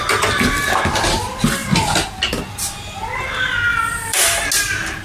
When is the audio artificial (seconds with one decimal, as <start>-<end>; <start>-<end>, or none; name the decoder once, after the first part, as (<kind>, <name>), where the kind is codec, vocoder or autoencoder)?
3.7-4.4 (vocoder, BigVGAN v2)